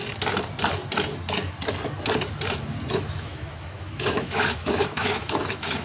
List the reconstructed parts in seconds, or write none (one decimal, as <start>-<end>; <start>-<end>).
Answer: 2.9-5.8